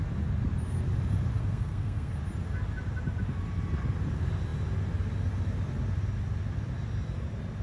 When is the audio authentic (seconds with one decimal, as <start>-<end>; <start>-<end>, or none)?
0.0-1.4; 2.1-7.6